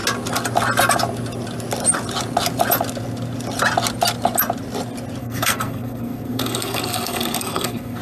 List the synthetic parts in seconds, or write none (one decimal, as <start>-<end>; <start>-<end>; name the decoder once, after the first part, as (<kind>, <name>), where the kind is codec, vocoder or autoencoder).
5.2-8.0 (codec, SNAC)